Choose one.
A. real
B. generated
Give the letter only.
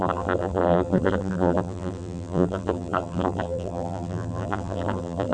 B